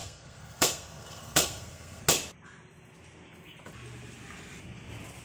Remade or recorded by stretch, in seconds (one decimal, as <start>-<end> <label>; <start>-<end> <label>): 0.0-2.0 remade; 2.0-5.2 recorded